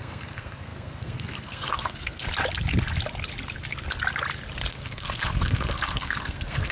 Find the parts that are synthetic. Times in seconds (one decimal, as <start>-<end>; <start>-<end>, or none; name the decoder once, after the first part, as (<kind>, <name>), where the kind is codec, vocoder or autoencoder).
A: 0.0-2.3 (codec, SNAC); 4.7-6.7